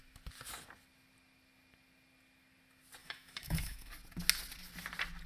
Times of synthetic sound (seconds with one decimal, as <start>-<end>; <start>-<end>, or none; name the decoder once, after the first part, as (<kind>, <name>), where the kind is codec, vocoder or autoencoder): 3.0-3.9 (autoencoder, DAC-VAE)